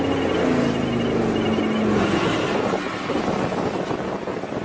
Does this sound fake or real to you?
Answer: real